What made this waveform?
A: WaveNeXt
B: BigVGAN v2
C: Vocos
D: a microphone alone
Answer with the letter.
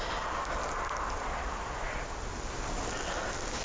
D